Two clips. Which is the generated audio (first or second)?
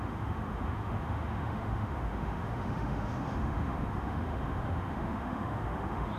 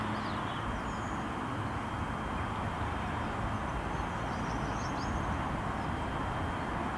first